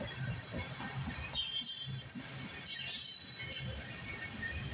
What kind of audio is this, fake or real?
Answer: real